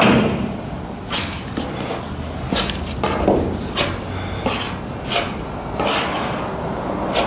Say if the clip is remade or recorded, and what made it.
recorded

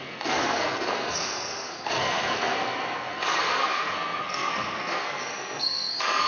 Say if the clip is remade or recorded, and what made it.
remade, codec, SNAC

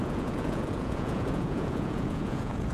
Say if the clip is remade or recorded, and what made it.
remade, vocoder, Vocos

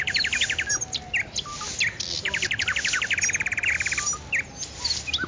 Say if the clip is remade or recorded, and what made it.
recorded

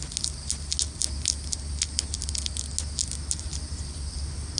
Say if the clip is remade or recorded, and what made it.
recorded